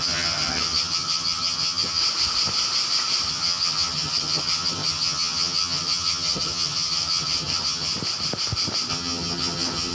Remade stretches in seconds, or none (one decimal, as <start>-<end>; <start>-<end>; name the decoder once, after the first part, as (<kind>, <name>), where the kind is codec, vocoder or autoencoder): 0.0-2.0 (vocoder, HiFi-GAN); 3.3-7.9; 8.9-9.9